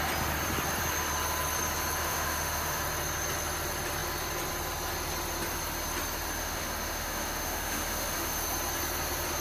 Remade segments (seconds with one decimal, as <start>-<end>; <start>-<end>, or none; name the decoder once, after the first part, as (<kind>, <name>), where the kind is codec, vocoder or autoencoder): 2.0-2.8 (autoencoder, DAC-VAE); 6.4-8.4